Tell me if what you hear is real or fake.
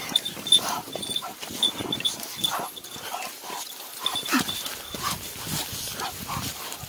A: real